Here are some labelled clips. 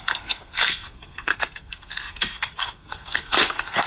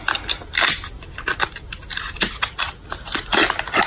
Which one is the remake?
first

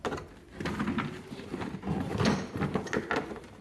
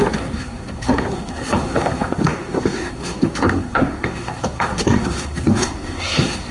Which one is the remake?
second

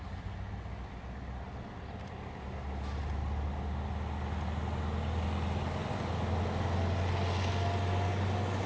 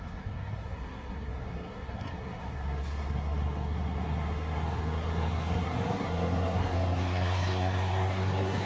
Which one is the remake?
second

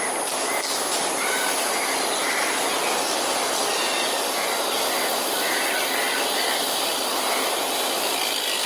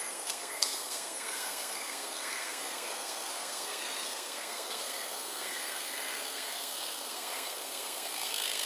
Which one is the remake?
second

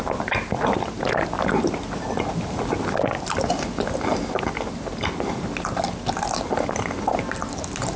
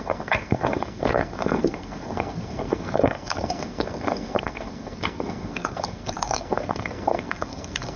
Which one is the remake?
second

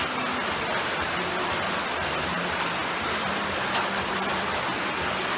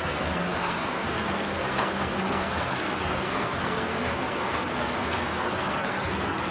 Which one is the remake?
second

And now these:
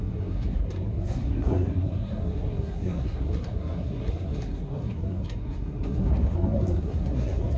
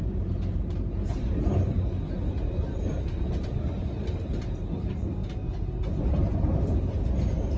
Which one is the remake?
first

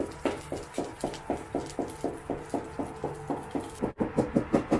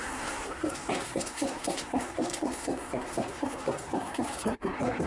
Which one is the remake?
second